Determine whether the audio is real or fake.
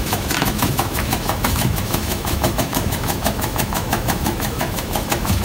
fake